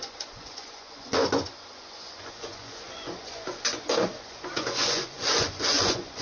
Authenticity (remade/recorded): remade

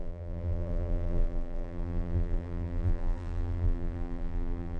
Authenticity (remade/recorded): remade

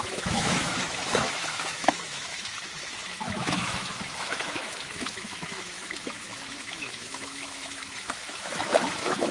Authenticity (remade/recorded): remade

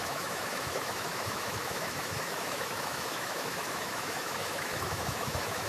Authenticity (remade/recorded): remade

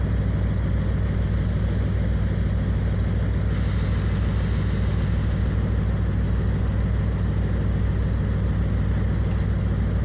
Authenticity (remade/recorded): recorded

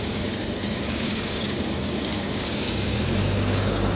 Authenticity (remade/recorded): remade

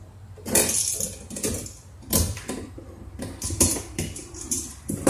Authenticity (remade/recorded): recorded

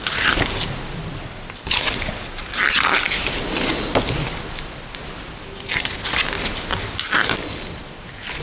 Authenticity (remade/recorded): recorded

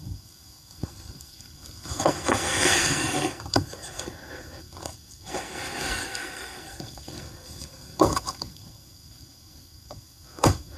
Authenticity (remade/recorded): remade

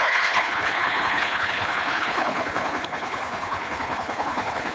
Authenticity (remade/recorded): remade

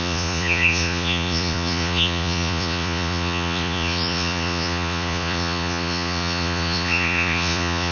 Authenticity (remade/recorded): remade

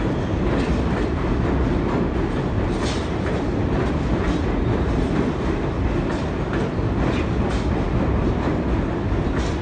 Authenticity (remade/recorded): recorded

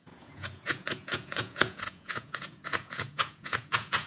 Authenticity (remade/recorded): remade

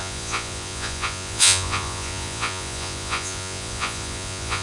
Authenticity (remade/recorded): remade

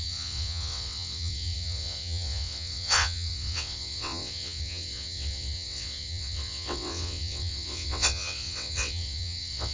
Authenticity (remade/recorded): remade